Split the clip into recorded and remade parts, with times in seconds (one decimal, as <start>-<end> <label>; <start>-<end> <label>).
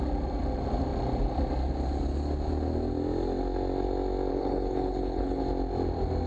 0.0-4.3 recorded; 4.3-5.4 remade; 5.4-6.3 recorded